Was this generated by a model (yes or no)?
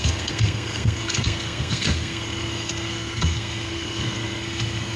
yes